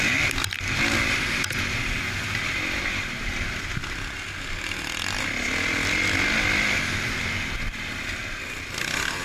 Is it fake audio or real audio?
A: real